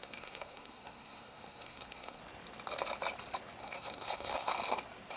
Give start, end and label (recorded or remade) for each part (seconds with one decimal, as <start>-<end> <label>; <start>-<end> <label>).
0.0-2.2 remade; 2.2-3.6 recorded; 3.6-4.5 remade; 4.5-5.2 recorded